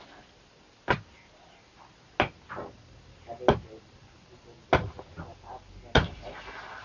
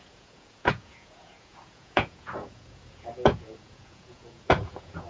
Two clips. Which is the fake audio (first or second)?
second